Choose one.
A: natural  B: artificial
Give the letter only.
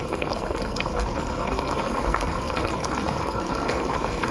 B